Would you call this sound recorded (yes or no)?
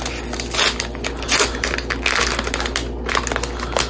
yes